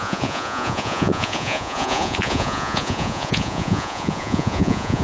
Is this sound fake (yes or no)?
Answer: yes